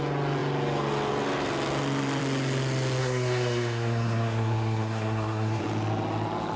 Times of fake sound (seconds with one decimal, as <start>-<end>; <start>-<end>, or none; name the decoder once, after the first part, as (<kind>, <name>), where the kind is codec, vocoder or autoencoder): 3.0-5.6 (codec, SNAC)